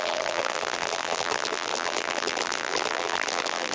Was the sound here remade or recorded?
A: remade